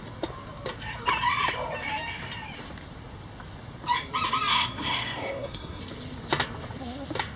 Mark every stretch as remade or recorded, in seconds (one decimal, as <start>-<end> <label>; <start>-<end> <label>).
0.0-4.5 recorded; 4.5-5.8 remade; 5.8-7.4 recorded